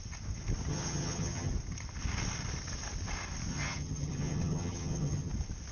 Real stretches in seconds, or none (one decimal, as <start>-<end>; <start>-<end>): 0.0-0.7; 1.5-3.5; 5.3-5.7